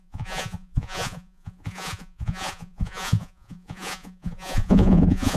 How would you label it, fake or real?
fake